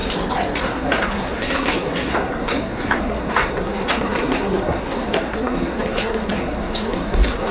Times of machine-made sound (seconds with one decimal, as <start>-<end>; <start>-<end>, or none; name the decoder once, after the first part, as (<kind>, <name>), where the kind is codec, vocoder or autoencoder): 0.6-7.5 (codec, SNAC)